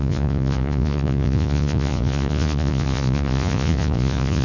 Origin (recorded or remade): remade